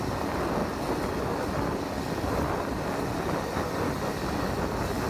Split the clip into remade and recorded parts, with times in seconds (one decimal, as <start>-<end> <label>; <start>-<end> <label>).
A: 0.0-5.1 recorded